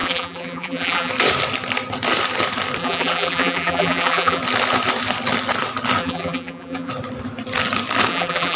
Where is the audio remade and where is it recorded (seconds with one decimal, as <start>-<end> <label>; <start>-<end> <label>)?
0.0-1.1 remade; 1.1-2.8 recorded; 2.8-4.4 remade; 4.4-6.0 recorded; 6.0-6.9 remade; 6.9-8.1 recorded; 8.1-8.6 remade